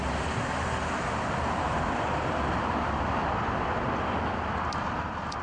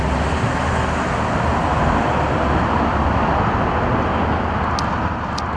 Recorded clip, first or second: second